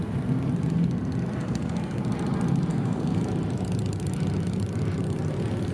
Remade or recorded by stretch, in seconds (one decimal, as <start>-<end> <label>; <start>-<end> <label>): 0.0-1.4 recorded; 1.4-2.0 remade; 2.0-2.7 recorded; 2.7-3.2 remade; 3.2-5.7 recorded